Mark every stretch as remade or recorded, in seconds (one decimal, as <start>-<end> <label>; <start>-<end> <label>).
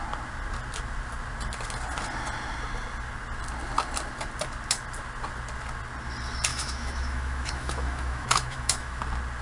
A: 0.0-6.5 recorded; 6.5-9.0 remade; 9.0-9.4 recorded